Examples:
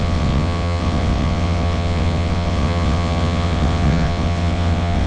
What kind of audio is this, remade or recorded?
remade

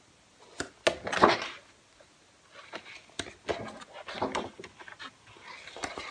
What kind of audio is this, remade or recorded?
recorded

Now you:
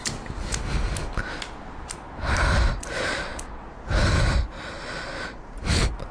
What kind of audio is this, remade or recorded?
recorded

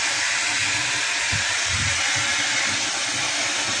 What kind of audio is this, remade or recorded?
recorded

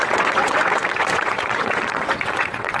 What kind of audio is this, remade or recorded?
remade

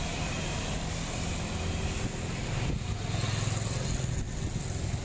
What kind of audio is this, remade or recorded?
recorded